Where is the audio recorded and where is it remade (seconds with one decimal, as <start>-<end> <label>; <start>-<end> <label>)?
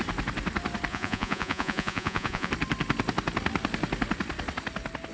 0.0-0.9 recorded; 0.9-2.5 remade; 2.5-5.1 recorded